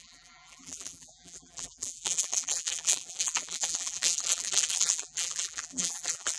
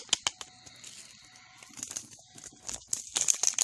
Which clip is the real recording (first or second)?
second